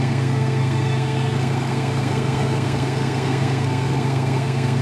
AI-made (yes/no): yes